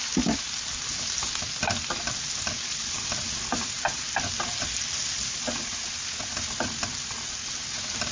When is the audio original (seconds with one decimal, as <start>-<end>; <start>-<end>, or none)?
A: 0.0-8.1